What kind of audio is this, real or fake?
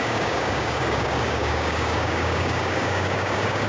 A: fake